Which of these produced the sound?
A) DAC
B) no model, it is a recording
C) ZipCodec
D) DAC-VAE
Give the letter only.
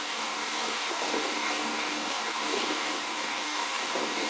A